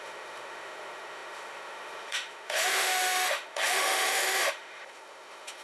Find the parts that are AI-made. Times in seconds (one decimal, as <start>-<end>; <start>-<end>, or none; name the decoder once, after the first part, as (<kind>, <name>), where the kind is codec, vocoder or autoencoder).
0.0-5.6 (autoencoder, DAC-VAE)